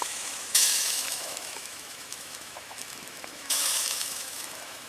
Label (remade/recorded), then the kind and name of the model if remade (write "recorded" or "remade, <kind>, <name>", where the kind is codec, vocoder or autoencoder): remade, autoencoder, DAC-VAE